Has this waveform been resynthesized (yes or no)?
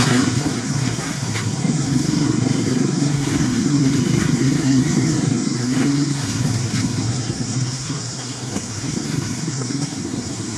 yes